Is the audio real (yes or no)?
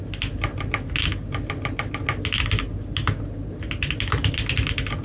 yes